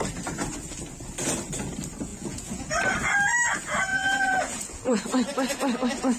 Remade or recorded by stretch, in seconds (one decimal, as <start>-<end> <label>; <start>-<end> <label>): 0.0-2.1 recorded; 2.1-2.7 remade; 2.7-3.9 recorded; 3.9-5.0 remade; 5.0-6.2 recorded

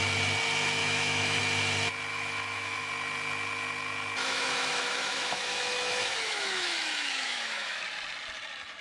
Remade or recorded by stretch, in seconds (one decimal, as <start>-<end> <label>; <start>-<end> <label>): 0.0-0.8 recorded; 0.8-1.4 remade; 1.4-2.1 recorded; 2.1-2.9 remade; 2.9-4.2 recorded; 4.2-7.8 remade; 7.8-8.8 recorded

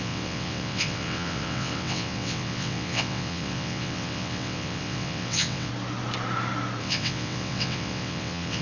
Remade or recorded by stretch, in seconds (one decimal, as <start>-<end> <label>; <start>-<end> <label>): 0.0-5.7 remade; 5.7-6.8 recorded; 6.8-8.6 remade

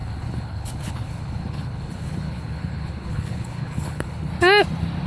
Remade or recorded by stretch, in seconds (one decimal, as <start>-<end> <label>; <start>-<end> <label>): 0.0-4.3 remade; 4.3-5.1 recorded

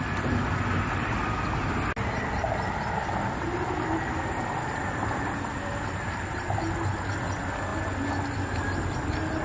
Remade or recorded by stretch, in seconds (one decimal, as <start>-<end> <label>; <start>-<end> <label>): 0.0-7.7 recorded; 7.7-8.6 remade; 8.6-9.4 recorded